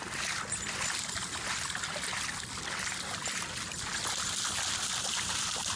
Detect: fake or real real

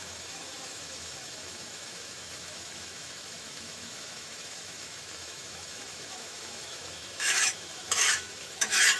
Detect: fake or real fake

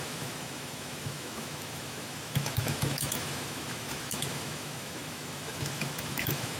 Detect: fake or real fake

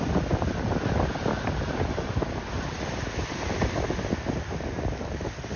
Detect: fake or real real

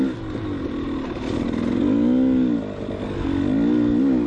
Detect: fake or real real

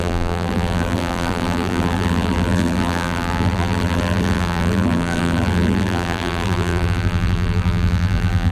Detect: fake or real fake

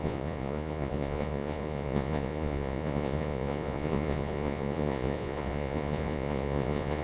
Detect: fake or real fake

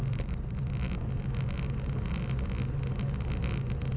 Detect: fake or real real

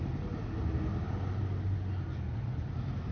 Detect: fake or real real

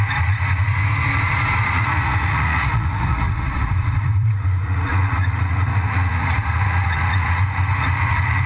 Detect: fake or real fake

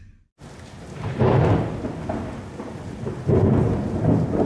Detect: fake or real real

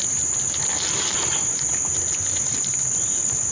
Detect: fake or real real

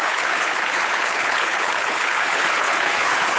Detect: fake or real fake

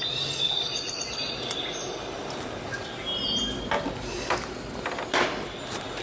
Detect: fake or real real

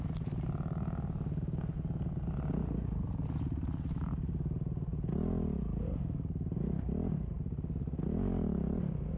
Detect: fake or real real